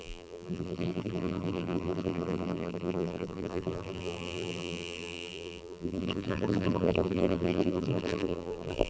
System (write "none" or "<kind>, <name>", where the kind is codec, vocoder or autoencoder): vocoder, BigVGAN v2